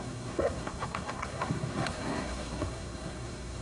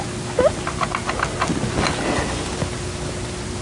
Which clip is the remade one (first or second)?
first